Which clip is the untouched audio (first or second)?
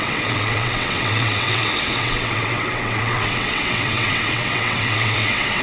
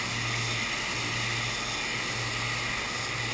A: second